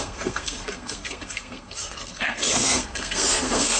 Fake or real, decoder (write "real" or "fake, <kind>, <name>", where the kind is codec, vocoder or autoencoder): fake, codec, SNAC